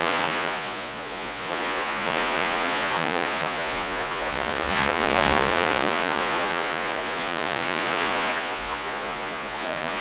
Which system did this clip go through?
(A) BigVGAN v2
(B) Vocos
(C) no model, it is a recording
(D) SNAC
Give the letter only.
B